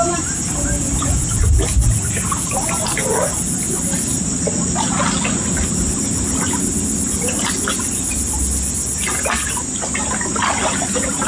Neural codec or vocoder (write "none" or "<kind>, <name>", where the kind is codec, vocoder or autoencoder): none